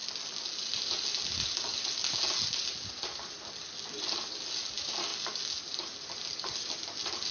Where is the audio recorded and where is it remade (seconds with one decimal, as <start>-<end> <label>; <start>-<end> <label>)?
0.0-2.8 recorded; 2.8-5.1 remade; 5.1-5.6 recorded; 5.6-7.3 remade